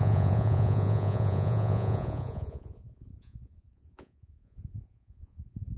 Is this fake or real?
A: fake